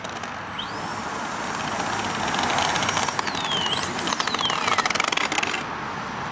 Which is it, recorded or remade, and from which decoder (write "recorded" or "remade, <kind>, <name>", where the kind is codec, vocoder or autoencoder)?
recorded